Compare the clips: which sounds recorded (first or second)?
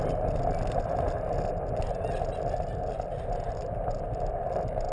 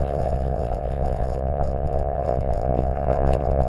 first